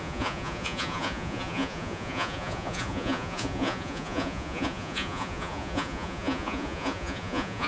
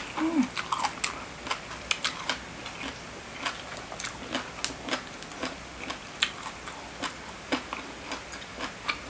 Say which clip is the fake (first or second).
first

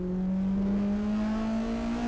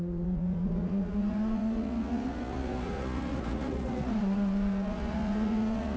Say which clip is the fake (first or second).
second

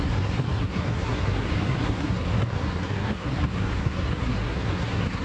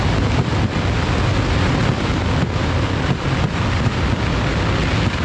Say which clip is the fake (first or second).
first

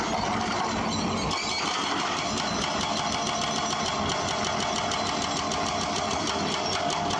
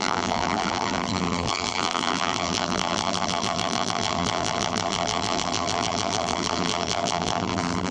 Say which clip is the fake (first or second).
second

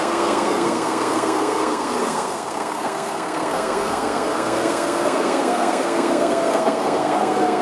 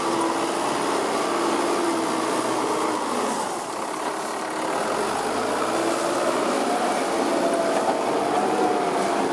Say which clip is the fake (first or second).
first